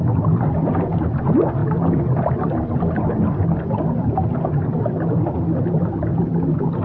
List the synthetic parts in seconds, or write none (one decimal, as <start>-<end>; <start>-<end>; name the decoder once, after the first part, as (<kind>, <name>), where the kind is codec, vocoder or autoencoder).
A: none